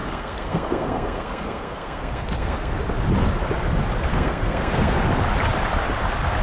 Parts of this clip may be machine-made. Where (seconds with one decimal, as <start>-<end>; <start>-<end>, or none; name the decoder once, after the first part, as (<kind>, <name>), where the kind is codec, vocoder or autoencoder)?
0.0-2.8 (codec, SNAC); 4.1-5.0